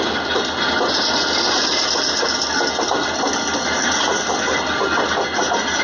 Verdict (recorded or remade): recorded